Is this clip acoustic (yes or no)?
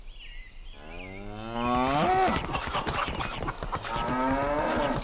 yes